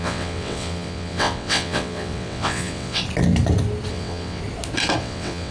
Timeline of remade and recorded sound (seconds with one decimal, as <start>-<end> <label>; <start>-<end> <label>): 0.0-3.0 remade; 3.0-3.9 recorded; 3.9-4.4 remade; 4.4-5.0 recorded; 5.0-5.5 remade